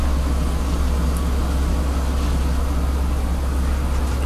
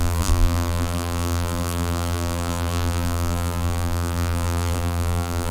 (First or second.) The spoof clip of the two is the second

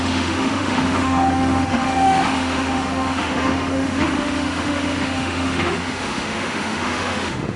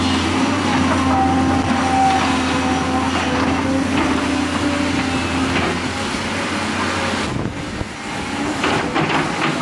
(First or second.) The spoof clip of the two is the first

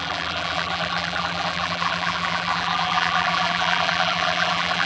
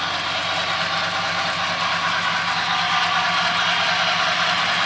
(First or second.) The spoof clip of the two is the first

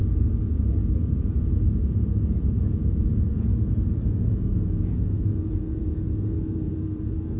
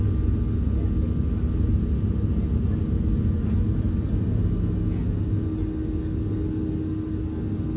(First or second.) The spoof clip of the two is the first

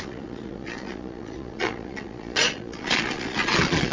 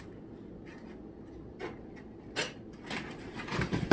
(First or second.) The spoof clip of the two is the first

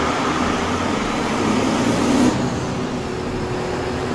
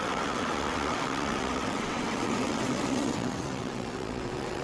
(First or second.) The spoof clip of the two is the second